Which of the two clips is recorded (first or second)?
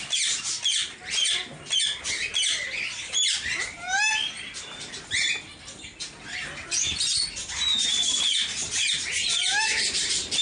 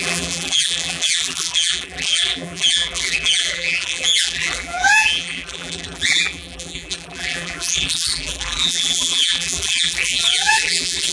first